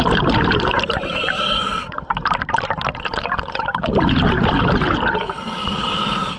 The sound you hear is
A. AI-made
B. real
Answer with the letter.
A